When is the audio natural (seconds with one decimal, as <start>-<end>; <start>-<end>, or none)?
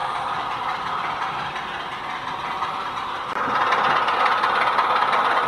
3.2-5.5